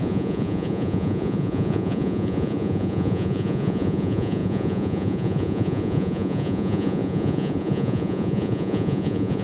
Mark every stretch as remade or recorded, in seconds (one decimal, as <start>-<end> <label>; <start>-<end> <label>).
0.0-9.4 remade